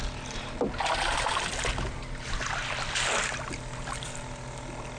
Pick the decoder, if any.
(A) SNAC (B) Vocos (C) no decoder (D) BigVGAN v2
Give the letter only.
C